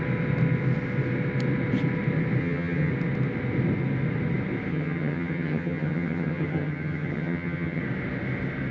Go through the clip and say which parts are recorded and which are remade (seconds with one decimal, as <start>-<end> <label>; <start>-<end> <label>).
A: 0.0-2.4 recorded; 2.4-2.9 remade; 2.9-4.7 recorded; 4.7-7.8 remade; 7.8-8.7 recorded